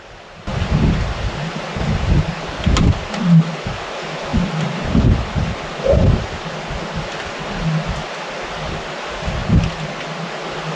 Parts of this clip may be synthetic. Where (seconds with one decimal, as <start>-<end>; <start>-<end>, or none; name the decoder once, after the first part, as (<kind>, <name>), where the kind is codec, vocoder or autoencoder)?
none